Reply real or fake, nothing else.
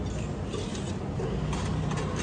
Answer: real